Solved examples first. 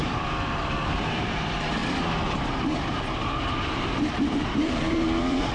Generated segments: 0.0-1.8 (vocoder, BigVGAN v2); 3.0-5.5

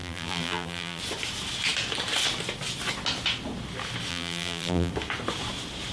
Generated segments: 0.0-1.0 (vocoder, BigVGAN v2); 4.1-4.9

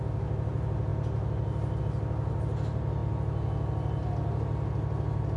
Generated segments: none

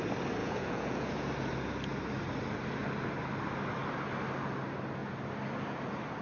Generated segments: 0.4-1.3 (vocoder, Vocos)

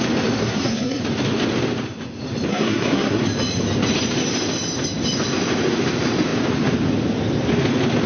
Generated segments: 0.4-1.0 (codec, SNAC); 2.5-3.2

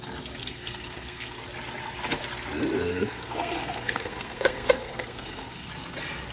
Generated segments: 0.4-1.4 (codec, SNAC); 2.9-5.7

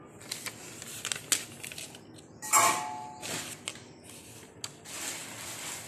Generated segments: none